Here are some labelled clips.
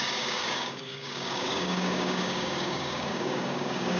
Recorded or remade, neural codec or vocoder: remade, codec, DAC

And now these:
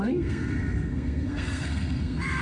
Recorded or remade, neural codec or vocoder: remade, codec, SNAC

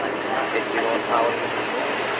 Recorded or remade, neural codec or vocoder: recorded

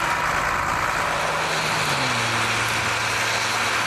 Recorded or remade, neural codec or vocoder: recorded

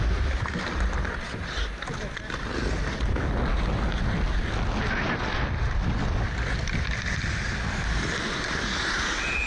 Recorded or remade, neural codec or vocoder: recorded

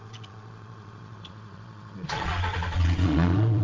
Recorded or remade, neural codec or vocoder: remade, vocoder, Vocos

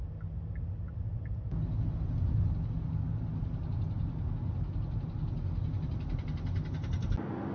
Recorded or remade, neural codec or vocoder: recorded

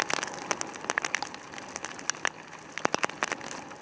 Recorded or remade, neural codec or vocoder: recorded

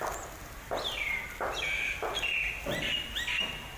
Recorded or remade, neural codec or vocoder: recorded